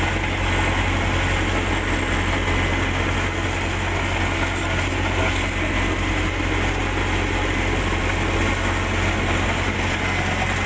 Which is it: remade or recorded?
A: recorded